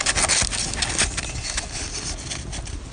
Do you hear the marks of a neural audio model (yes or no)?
no